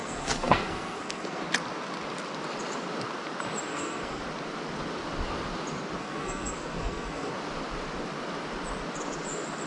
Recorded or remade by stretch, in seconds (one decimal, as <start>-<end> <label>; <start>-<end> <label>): 0.0-1.4 remade; 1.4-3.7 recorded; 3.7-4.2 remade; 4.2-6.0 recorded; 6.0-7.3 remade; 7.3-9.7 recorded